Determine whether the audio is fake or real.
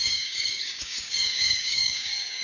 fake